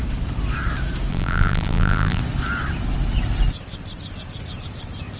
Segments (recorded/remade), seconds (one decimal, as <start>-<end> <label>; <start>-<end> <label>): 0.0-1.1 recorded; 1.1-2.2 remade; 2.2-5.2 recorded